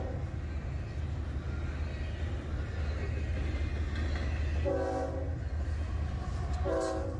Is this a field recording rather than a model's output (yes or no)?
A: yes